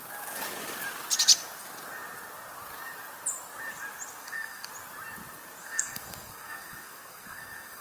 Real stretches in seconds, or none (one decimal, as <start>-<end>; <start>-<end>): 0.0-4.2; 4.7-5.6